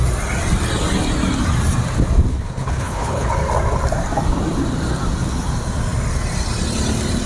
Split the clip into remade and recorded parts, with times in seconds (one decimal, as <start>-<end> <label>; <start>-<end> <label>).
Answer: 0.0-2.3 recorded; 2.3-3.3 remade; 3.3-7.3 recorded